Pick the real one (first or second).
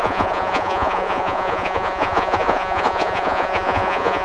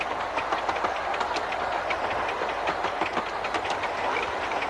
second